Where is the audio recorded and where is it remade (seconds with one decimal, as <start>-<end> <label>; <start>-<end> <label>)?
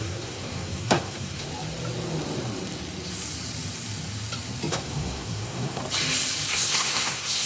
0.0-1.5 remade; 1.5-4.7 recorded; 4.7-5.8 remade; 5.8-6.5 recorded; 6.5-7.5 remade